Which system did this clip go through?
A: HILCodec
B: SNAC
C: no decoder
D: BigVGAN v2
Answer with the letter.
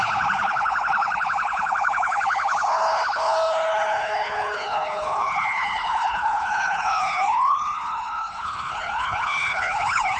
A